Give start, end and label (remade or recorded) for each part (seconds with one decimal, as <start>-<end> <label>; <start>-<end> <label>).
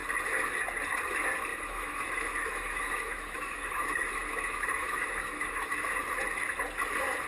0.0-1.5 recorded; 1.5-5.9 remade; 5.9-7.3 recorded